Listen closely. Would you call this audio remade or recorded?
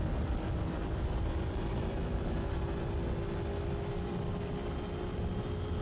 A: recorded